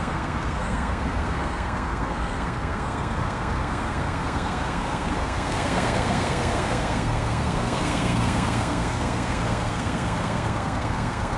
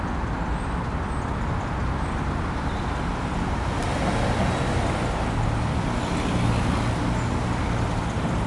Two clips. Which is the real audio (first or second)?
second